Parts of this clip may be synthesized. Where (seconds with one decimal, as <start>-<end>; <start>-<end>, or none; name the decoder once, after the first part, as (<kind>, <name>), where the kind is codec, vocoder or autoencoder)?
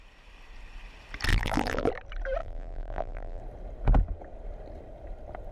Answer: 1.3-1.9 (vocoder, BigVGAN v2); 2.4-3.4